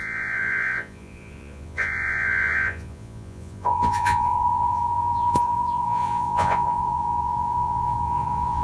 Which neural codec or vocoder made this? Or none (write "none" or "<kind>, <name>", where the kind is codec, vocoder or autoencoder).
vocoder, Vocos